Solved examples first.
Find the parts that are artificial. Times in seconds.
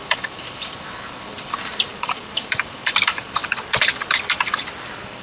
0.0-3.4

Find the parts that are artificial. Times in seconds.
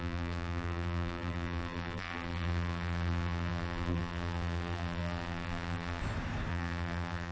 0.0-6.0; 6.5-7.3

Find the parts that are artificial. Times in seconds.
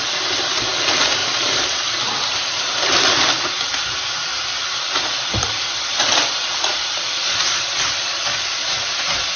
1.2-3.3; 4.3-9.0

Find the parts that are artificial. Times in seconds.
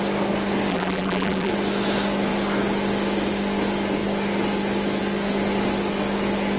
0.7-1.5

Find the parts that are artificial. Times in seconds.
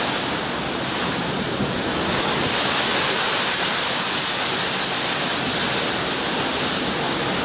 1.0-1.9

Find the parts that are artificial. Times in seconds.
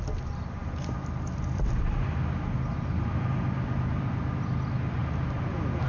0.6-4.1